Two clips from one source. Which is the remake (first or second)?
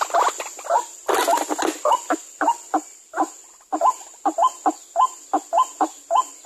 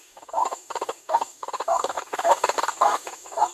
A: second